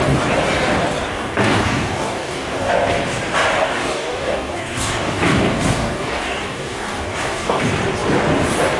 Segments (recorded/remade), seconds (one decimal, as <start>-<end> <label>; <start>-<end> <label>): 0.0-1.1 recorded; 1.1-2.7 remade; 2.7-3.6 recorded; 3.6-7.6 remade; 7.6-8.8 recorded